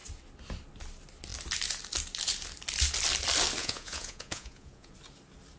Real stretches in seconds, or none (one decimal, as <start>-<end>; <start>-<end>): 0.0-3.6; 4.9-5.6